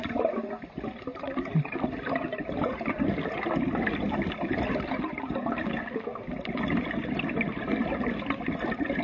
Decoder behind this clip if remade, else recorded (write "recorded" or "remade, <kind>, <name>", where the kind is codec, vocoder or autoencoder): recorded